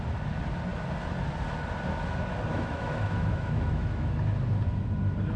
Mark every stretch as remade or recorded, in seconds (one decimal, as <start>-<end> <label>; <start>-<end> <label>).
0.0-2.5 recorded; 2.5-4.1 remade; 4.1-5.4 recorded